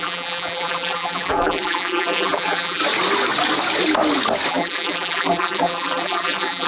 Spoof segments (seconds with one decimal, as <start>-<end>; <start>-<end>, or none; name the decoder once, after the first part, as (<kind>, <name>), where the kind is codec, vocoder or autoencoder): 0.0-2.8 (vocoder, BigVGAN v2); 4.5-6.7